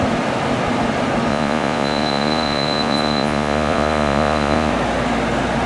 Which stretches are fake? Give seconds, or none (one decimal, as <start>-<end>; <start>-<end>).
1.3-4.7